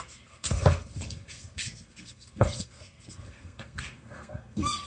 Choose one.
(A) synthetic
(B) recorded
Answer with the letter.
A